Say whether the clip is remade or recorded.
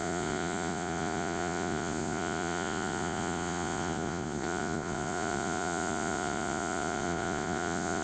remade